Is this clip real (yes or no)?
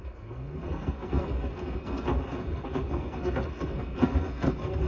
no